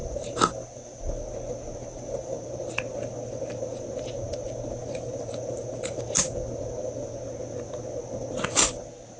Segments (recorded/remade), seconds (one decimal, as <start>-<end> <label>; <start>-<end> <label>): 0.0-1.0 remade; 1.0-1.9 recorded; 1.9-2.5 remade; 2.5-9.2 recorded